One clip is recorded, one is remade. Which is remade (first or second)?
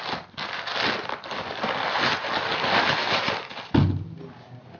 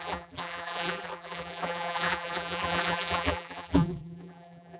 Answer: second